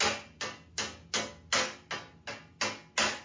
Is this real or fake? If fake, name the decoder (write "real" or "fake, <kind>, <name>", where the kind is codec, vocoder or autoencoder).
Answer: real